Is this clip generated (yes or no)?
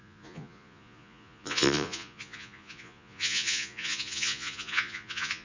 yes